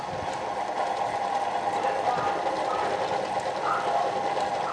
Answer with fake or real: real